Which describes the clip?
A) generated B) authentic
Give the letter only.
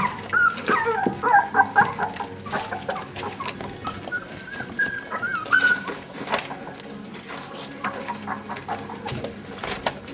B